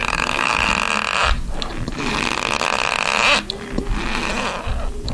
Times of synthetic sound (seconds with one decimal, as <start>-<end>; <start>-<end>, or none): 0.0-0.7